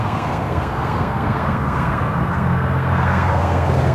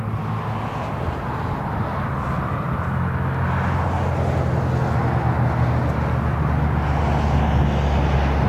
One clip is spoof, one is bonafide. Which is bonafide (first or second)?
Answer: second